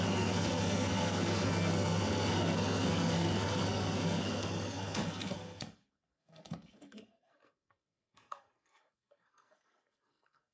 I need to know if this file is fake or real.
fake